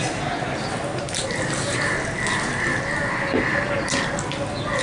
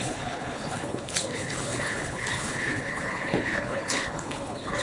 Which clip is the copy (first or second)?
second